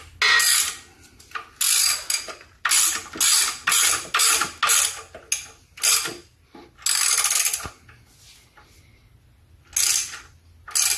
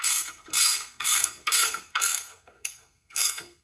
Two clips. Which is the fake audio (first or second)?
second